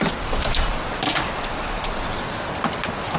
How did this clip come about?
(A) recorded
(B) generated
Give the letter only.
A